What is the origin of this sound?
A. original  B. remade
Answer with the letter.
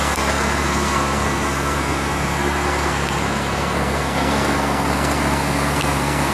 B